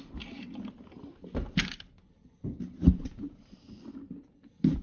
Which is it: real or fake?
real